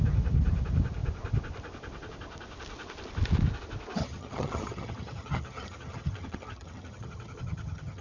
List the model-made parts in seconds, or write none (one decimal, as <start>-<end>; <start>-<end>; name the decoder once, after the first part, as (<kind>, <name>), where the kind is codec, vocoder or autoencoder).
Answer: 4.0-8.0 (vocoder, HiFi-GAN)